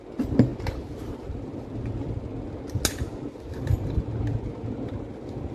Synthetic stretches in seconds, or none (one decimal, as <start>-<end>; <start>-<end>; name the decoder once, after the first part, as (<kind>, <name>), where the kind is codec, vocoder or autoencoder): none